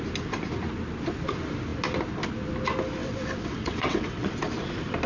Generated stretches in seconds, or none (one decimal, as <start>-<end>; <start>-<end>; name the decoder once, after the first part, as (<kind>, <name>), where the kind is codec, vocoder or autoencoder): 3.0-4.3 (vocoder, WaveNeXt)